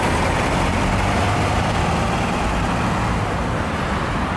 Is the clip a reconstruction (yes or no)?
no